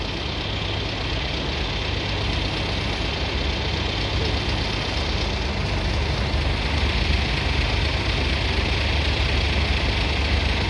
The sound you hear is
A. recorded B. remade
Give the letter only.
A